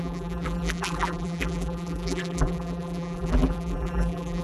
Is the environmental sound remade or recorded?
remade